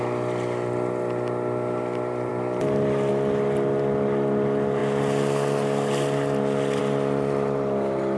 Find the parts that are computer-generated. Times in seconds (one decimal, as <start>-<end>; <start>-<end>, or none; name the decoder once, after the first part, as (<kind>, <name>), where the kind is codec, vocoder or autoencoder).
none